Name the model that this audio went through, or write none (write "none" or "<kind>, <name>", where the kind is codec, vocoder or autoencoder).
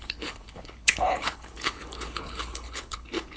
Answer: codec, HILCodec